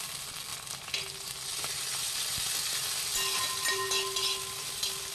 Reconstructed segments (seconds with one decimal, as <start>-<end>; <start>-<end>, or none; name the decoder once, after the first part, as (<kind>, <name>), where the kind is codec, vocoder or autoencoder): none